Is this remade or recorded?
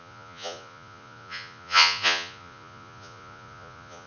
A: remade